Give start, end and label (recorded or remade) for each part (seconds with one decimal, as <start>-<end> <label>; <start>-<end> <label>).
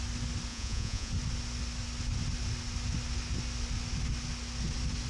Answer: 0.0-0.5 recorded; 0.5-1.1 remade; 1.1-5.1 recorded